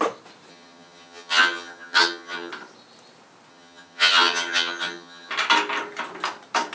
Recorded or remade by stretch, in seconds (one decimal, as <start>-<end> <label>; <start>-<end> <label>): 0.0-0.5 recorded; 0.5-2.5 remade; 2.5-3.5 recorded; 3.5-5.3 remade; 5.3-6.7 recorded